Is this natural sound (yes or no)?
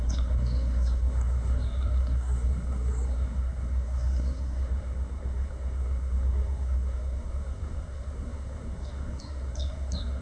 no